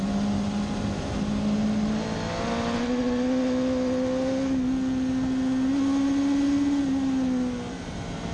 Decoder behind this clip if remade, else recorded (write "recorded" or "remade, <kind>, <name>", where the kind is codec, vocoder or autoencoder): recorded